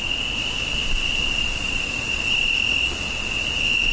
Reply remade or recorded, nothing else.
recorded